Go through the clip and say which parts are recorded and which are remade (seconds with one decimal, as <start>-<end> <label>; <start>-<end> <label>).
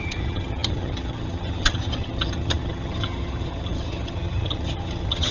0.0-5.3 remade